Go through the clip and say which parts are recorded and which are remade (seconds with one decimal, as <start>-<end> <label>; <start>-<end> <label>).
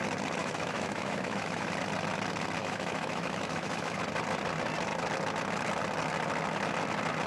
0.0-0.4 recorded; 0.4-1.7 remade; 1.7-2.6 recorded; 2.6-4.0 remade; 4.0-7.3 recorded